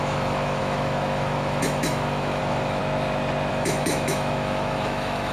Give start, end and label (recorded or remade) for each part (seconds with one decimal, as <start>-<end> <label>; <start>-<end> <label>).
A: 0.0-2.8 remade; 2.8-3.5 recorded; 3.5-5.3 remade